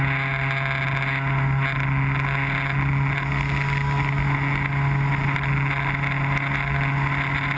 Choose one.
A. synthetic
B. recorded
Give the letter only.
B